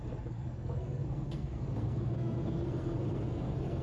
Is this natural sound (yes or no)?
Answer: no